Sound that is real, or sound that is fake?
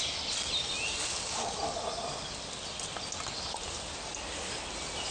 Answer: real